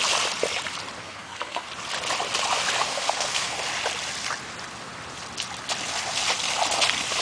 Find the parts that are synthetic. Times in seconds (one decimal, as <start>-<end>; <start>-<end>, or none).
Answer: 1.0-1.7; 2.9-3.6